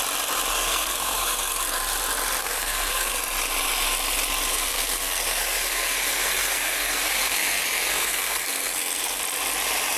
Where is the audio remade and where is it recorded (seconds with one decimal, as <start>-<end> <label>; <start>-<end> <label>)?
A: 0.0-0.5 recorded; 0.5-1.8 remade; 1.8-2.4 recorded; 2.4-3.2 remade; 3.2-4.5 recorded; 4.5-9.2 remade; 9.2-10.0 recorded